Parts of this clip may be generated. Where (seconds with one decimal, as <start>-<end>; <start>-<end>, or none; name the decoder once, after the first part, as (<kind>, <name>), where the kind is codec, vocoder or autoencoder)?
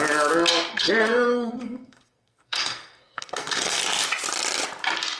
0.7-3.8 (codec, SNAC)